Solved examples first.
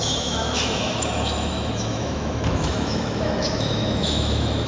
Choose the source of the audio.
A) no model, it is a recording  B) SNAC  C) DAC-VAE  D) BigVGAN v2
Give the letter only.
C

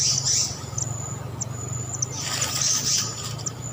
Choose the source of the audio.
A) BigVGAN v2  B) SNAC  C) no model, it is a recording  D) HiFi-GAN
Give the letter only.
C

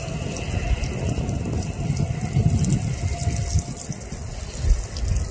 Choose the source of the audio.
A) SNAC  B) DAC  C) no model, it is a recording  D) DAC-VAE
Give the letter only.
C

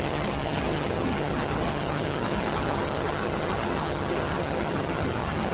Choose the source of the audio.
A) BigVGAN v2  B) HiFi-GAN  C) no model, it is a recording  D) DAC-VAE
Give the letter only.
B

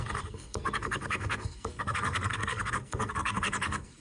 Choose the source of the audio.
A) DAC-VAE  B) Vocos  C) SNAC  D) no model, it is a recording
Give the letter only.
C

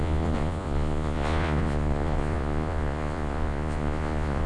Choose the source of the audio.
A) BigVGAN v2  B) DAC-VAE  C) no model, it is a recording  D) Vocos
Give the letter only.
D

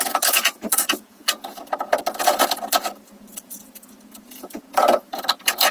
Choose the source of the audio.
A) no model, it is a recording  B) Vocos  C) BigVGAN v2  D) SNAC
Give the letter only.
B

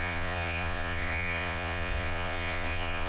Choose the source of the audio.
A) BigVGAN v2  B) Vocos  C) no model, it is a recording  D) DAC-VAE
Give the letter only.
B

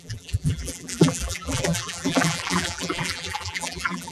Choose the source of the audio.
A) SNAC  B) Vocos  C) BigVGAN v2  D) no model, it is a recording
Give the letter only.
C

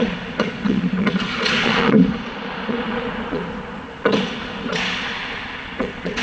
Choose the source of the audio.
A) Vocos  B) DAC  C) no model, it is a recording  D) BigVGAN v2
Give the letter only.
A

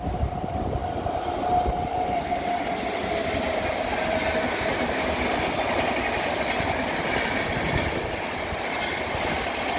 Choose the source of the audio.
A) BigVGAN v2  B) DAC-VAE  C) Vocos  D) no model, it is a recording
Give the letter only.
D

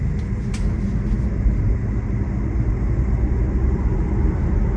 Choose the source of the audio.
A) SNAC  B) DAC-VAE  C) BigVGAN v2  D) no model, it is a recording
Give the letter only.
D